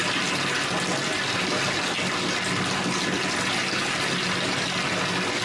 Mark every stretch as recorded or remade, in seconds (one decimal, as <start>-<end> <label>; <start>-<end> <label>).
0.0-5.4 recorded

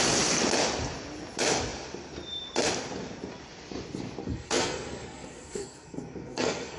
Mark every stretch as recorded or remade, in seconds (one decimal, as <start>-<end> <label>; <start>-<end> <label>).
0.0-4.2 recorded; 4.2-6.8 remade

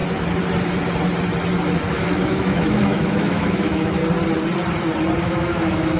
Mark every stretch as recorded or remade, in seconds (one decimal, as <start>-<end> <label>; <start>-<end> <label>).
0.0-1.9 recorded; 1.9-4.0 remade; 4.0-5.2 recorded; 5.2-6.0 remade